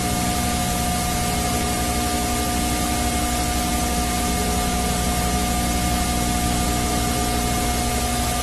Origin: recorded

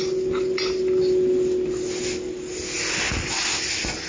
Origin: recorded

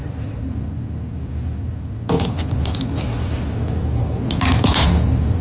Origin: recorded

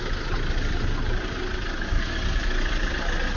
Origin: recorded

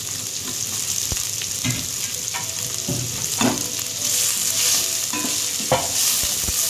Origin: recorded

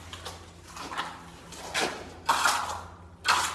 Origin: recorded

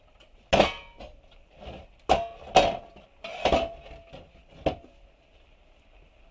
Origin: recorded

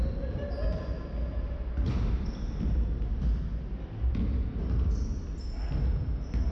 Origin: recorded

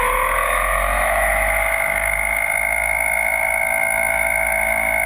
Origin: remade